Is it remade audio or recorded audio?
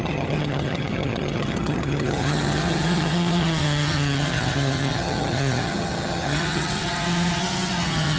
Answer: remade